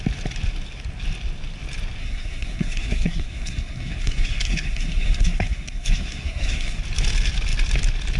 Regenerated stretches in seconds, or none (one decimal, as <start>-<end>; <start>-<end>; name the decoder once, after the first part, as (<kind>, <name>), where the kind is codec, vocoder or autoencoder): 2.0-6.8 (codec, SNAC)